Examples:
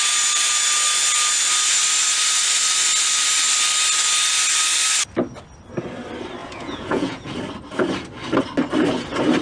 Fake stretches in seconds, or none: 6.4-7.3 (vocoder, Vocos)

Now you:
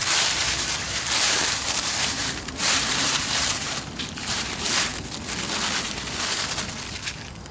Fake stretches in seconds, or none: 0.0-4.9 (vocoder, BigVGAN v2)